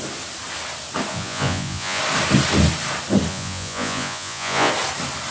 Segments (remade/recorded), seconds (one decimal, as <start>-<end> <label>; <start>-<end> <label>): 0.0-1.1 recorded; 1.1-2.0 remade; 2.0-3.3 recorded; 3.3-4.7 remade; 4.7-5.3 recorded